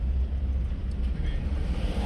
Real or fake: real